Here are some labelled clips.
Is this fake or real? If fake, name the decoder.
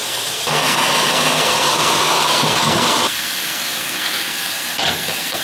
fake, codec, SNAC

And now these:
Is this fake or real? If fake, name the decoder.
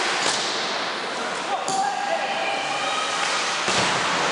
real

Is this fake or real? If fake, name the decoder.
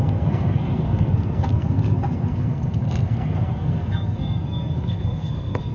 fake, codec, SNAC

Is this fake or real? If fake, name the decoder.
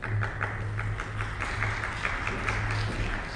real